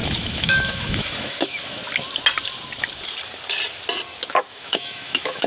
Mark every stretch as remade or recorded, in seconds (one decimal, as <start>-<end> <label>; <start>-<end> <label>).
0.0-1.8 remade; 1.8-4.3 recorded; 4.3-5.5 remade